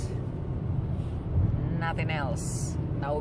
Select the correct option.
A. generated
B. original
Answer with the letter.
B